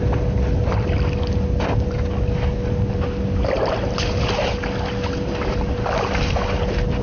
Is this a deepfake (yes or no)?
no